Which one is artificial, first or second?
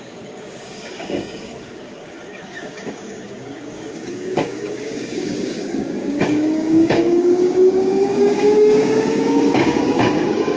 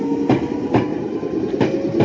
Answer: first